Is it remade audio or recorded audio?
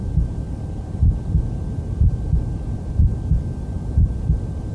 recorded